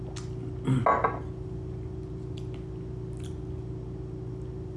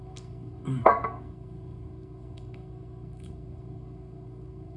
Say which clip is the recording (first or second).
first